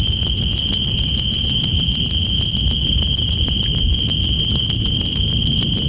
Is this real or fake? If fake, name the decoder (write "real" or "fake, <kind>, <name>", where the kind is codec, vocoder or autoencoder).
real